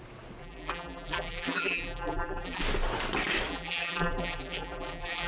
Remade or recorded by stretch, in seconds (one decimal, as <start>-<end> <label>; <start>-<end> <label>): 0.0-0.4 recorded; 0.4-2.6 remade; 2.6-3.5 recorded; 3.5-5.3 remade